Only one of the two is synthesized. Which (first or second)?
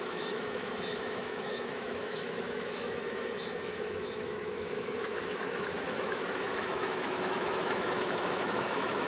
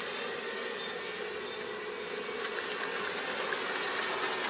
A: first